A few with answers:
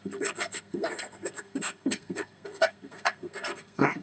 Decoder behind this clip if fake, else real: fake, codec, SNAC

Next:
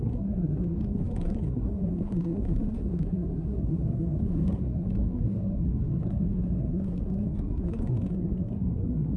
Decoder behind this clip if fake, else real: fake, codec, SNAC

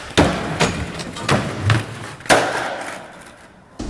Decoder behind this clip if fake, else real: real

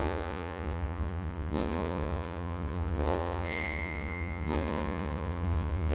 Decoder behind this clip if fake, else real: fake, vocoder, Vocos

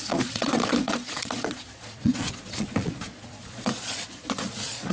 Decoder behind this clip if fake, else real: fake, vocoder, Vocos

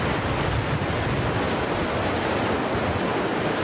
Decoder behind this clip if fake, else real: real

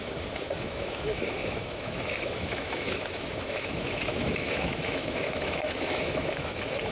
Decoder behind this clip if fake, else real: fake, autoencoder, DAC-VAE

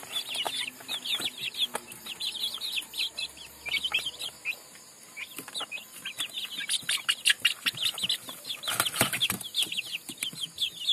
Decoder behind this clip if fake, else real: real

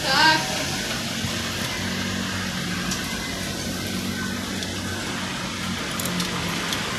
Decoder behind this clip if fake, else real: real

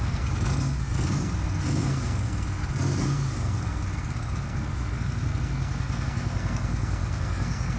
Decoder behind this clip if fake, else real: fake, codec, SNAC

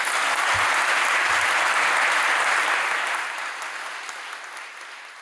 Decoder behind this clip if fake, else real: real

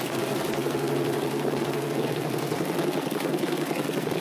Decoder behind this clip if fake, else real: fake, codec, SNAC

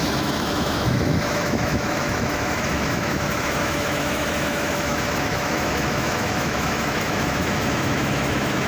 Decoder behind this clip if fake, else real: fake, autoencoder, DAC-VAE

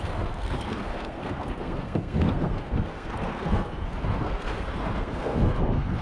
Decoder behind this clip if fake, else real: fake, codec, SNAC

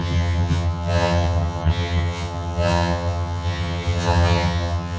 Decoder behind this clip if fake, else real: fake, vocoder, HiFi-GAN